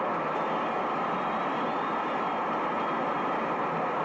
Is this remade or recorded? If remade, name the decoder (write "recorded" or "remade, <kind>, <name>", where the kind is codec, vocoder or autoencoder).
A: recorded